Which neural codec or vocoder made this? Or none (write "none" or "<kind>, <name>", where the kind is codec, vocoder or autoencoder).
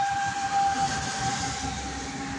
none